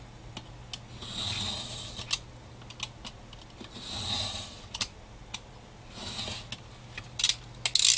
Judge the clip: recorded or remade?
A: recorded